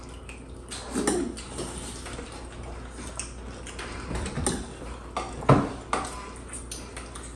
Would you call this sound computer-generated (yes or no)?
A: no